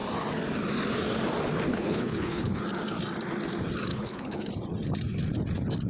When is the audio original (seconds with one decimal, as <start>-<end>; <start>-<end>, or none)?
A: 0.0-1.7; 2.6-3.9; 4.5-5.9